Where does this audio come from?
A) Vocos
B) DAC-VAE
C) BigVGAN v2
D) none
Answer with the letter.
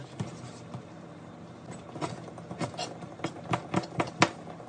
D